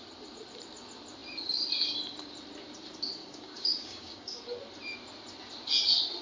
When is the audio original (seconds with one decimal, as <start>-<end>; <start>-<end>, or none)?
0.0-3.2; 4.4-6.2